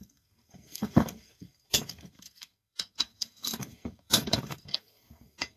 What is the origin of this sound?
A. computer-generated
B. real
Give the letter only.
A